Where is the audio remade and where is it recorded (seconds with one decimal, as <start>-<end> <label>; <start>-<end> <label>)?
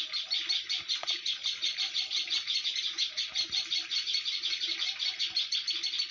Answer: 0.0-6.1 recorded